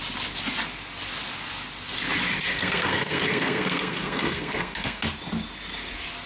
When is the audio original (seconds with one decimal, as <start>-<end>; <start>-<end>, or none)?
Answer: 0.0-2.5; 5.0-6.3